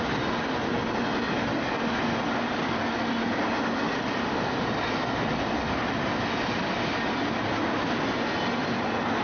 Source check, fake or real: real